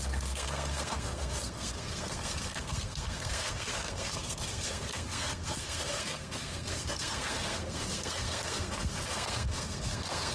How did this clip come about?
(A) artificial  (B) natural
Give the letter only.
A